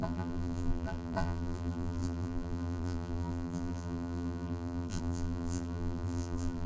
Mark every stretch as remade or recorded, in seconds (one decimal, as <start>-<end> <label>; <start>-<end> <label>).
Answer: 0.0-6.7 remade